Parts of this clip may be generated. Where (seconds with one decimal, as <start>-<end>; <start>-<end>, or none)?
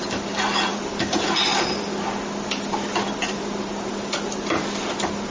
none